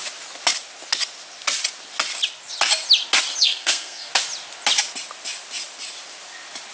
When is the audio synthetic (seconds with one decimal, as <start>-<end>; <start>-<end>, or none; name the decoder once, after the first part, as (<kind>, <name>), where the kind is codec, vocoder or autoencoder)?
3.4-4.1 (codec, SNAC)